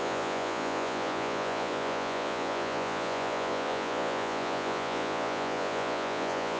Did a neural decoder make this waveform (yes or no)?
yes